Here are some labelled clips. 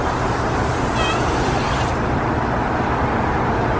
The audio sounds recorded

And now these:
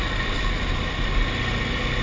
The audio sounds recorded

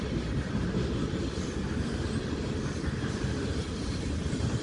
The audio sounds remade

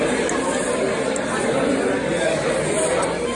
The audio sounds recorded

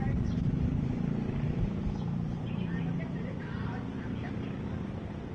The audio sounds remade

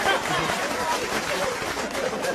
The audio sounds recorded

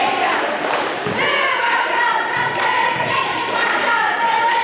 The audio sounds remade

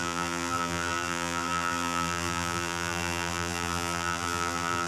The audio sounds remade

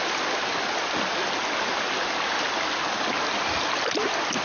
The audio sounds recorded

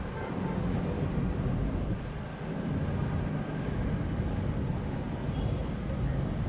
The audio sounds recorded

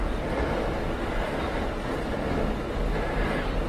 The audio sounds remade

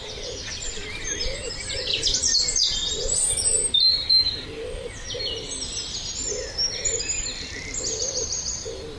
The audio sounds remade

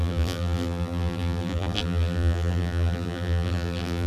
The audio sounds remade